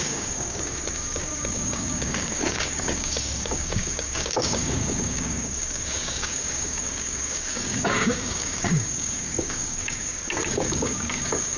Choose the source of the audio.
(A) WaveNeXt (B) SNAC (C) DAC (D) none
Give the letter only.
C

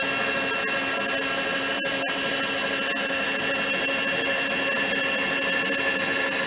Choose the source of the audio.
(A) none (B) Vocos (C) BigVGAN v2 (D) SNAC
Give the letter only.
A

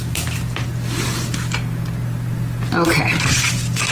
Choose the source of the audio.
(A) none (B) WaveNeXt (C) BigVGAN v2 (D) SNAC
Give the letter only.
A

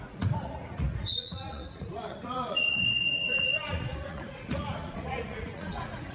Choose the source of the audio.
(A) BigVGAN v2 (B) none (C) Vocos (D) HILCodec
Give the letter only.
C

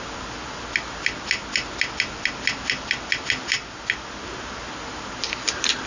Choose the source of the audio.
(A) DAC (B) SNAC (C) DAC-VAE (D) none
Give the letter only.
D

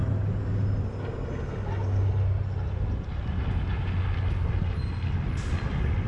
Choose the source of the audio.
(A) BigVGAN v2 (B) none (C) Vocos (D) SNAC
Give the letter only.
B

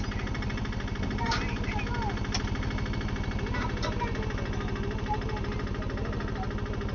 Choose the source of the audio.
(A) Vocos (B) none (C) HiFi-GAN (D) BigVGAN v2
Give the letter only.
B